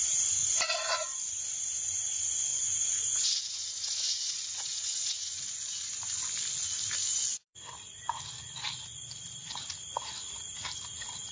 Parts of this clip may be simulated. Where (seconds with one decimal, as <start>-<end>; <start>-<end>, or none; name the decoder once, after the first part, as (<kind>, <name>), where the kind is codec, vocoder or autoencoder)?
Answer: 0.4-1.2 (vocoder, Vocos); 2.5-5.9